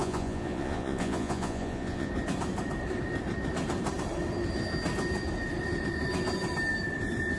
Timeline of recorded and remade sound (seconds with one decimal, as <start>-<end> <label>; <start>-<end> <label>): 0.0-2.1 remade; 2.1-7.4 recorded